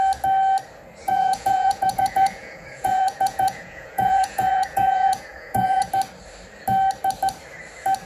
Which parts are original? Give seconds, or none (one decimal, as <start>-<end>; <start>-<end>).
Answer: 0.0-1.0; 5.9-8.1